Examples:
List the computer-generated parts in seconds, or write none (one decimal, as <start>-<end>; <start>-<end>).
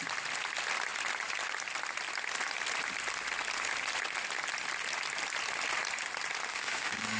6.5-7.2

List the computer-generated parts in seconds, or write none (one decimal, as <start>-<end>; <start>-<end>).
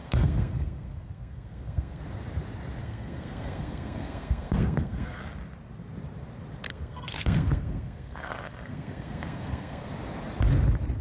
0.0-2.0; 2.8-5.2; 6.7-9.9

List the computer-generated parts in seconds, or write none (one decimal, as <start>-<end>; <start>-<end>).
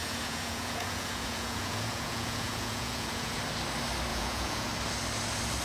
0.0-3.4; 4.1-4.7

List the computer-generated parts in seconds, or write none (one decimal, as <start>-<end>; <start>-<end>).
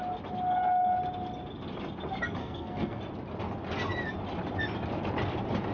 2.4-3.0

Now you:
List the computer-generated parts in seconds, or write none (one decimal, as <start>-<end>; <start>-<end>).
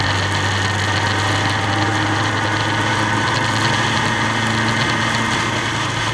none